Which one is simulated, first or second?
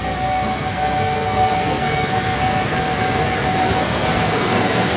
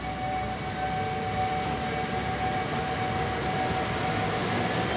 first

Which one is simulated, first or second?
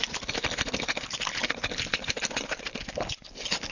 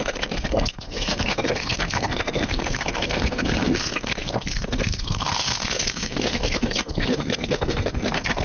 second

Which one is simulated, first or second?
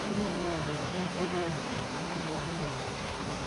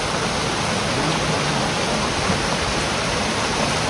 first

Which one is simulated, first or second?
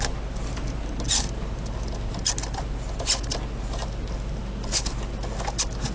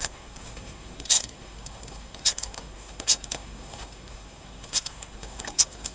second